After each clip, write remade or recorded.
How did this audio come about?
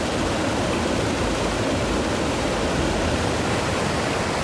recorded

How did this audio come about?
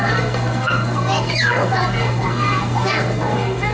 remade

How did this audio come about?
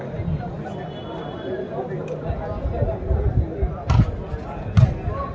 recorded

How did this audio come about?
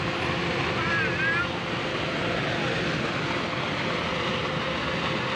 recorded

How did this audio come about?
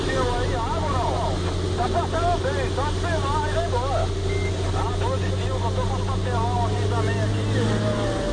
recorded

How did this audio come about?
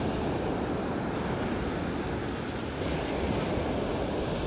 recorded